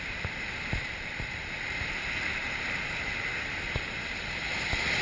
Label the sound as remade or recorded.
recorded